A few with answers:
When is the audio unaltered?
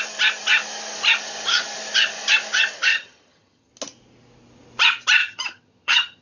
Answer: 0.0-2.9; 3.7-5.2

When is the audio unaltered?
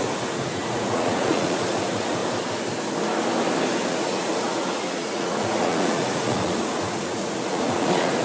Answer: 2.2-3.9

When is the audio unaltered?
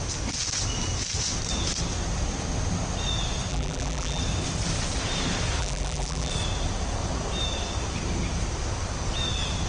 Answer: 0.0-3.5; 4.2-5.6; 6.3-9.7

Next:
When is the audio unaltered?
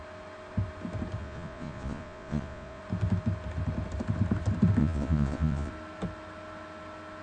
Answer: 0.0-1.2; 2.8-4.8; 5.7-7.2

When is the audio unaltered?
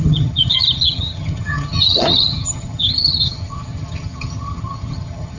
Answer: none